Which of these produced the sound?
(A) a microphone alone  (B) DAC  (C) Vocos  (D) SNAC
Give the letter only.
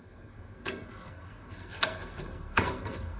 D